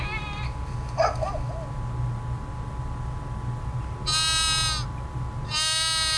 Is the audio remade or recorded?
recorded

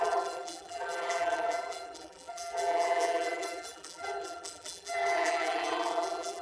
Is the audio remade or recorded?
remade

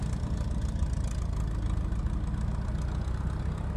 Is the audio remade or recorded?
recorded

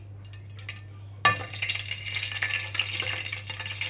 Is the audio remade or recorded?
recorded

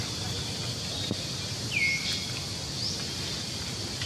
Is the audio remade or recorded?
recorded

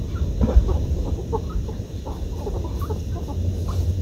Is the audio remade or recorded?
recorded